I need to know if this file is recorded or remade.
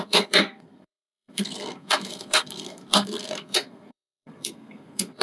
remade